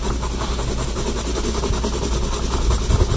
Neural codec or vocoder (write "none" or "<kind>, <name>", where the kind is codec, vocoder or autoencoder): none